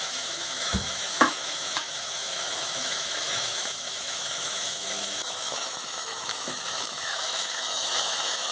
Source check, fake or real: fake